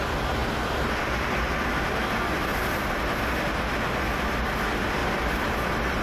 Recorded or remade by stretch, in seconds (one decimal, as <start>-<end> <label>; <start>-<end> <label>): 0.0-2.5 recorded; 2.5-3.4 remade; 3.4-5.0 recorded; 5.0-6.0 remade